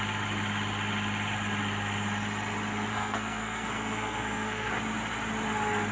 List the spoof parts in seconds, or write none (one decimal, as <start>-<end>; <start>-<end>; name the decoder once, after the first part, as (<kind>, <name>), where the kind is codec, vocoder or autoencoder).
2.9-4.7 (codec, SNAC)